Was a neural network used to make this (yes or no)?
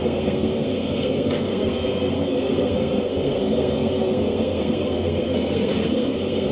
yes